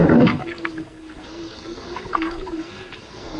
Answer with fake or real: fake